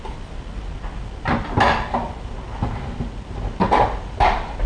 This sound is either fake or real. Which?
real